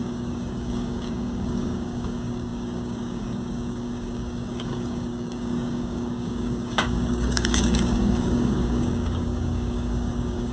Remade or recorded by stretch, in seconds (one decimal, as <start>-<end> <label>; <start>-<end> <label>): 0.0-10.5 remade